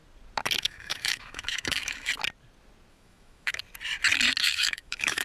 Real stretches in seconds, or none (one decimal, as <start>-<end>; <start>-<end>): 0.0-0.6; 2.1-2.9; 3.6-4.4